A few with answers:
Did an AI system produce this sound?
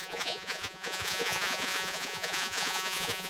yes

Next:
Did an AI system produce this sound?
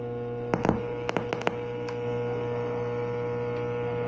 no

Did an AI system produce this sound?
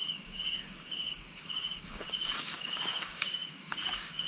yes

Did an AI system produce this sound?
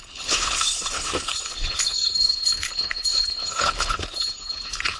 yes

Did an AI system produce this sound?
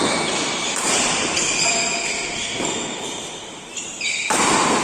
no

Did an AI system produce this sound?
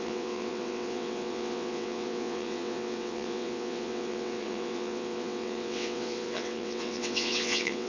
yes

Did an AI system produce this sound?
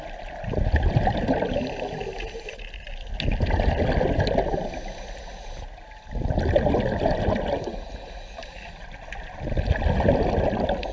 no